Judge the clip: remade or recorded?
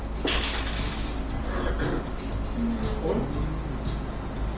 recorded